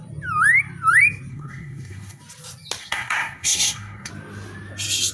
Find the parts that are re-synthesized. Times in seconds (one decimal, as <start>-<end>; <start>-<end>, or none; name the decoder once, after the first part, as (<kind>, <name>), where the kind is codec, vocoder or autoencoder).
1.3-2.2 (codec, SNAC); 2.8-4.1